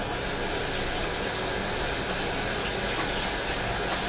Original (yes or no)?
yes